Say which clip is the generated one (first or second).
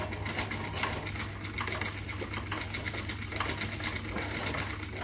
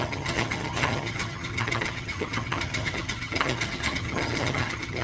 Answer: second